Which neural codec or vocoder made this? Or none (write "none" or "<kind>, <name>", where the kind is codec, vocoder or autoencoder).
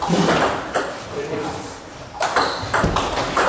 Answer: none